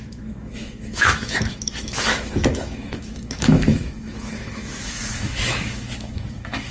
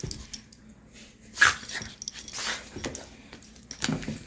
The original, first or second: second